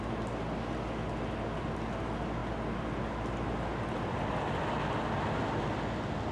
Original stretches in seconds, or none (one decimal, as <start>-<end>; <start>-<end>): 0.0-6.3